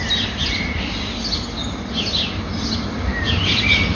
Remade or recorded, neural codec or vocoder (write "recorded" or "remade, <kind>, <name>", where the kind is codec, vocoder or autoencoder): recorded